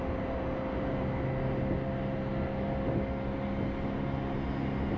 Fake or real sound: real